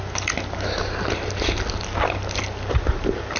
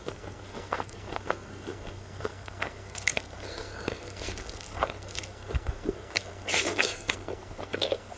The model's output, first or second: second